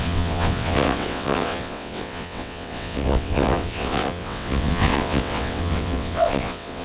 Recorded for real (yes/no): no